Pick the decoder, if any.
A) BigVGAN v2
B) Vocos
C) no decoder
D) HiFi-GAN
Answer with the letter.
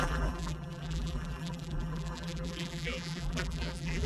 A